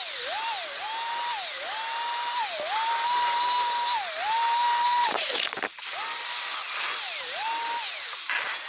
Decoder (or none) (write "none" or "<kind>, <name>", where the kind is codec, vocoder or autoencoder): none